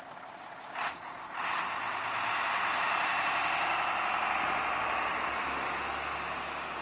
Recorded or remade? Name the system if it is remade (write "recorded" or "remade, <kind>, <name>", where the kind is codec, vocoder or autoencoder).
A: recorded